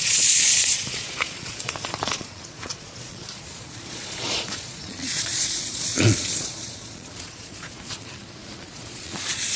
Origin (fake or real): fake